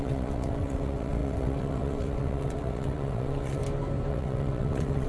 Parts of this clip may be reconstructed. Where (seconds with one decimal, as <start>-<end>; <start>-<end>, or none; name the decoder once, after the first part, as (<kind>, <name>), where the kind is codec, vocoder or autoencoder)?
0.0-3.6 (vocoder, WaveNeXt); 4.1-5.1